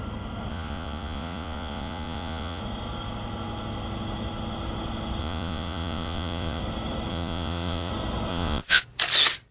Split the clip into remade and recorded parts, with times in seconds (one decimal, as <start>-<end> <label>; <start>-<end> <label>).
0.0-0.5 recorded; 0.5-2.6 remade; 2.6-5.2 recorded; 5.2-6.6 remade; 6.6-7.1 recorded; 7.1-7.9 remade; 7.9-8.3 recorded; 8.3-8.8 remade; 8.8-9.5 recorded